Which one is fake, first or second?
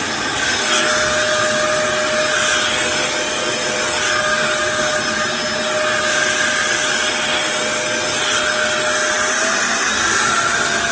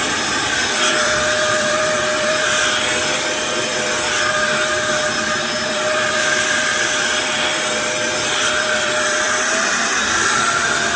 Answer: second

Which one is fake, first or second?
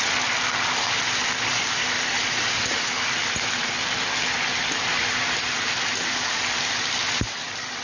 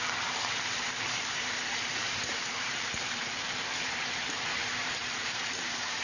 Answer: second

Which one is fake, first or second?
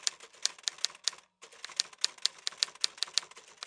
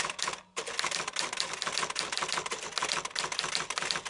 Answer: second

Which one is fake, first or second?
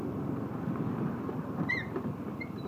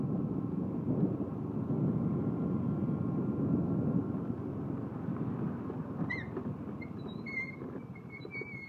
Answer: first